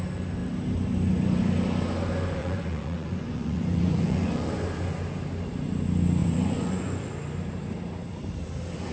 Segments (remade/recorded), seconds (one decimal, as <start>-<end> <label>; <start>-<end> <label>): 0.0-2.4 recorded; 2.4-4.5 remade; 4.5-6.2 recorded; 6.2-7.1 remade; 7.1-8.9 recorded